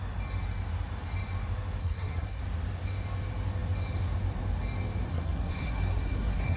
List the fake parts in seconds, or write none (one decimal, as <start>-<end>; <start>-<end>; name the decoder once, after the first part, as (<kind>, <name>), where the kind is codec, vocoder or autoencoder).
1.8-2.4 (codec, SNAC); 5.1-6.6